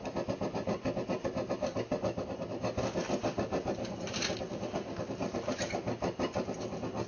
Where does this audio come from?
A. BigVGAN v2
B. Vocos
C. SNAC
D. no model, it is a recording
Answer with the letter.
D